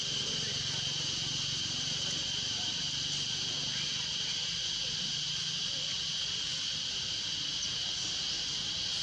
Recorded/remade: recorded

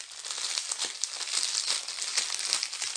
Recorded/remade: recorded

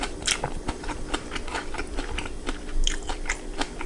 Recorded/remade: recorded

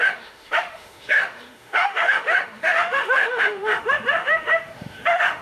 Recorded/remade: remade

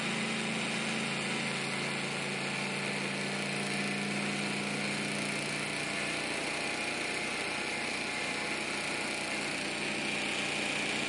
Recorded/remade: recorded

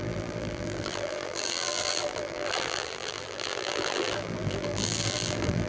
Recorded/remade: remade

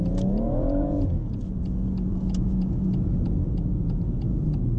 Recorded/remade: remade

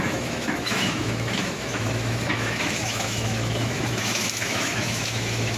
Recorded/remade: remade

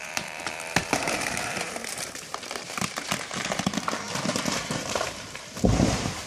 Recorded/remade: remade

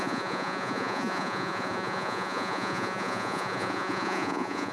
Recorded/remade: remade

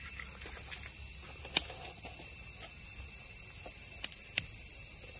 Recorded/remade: recorded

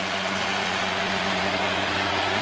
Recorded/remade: remade